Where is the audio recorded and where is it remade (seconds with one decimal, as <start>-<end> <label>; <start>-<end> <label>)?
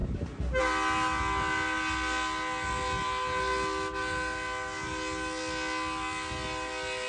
0.0-7.1 recorded